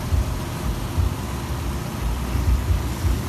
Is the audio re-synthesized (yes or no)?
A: no